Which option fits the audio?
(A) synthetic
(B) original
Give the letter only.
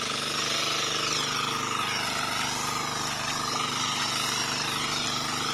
B